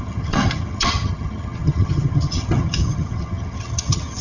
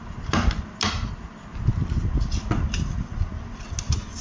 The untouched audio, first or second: second